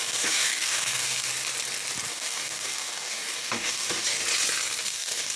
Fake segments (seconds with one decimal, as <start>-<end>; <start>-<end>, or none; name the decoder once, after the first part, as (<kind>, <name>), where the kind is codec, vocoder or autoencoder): 0.0-1.3 (codec, DAC); 2.1-4.2; 4.8-5.4